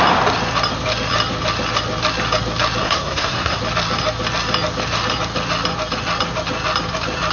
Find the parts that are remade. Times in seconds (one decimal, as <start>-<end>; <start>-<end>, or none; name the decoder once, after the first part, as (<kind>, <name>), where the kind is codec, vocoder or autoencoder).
2.8-3.6 (codec, SNAC)